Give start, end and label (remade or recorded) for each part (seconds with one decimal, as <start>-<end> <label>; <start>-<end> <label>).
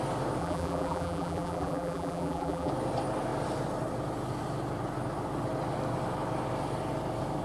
0.0-0.4 recorded; 0.4-2.7 remade; 2.7-7.4 recorded